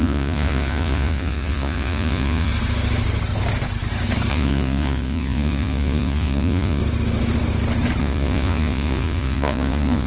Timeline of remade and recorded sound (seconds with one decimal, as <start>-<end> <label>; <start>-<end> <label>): 0.0-2.5 remade; 2.5-4.3 recorded; 4.3-6.8 remade; 6.8-8.0 recorded; 8.0-10.1 remade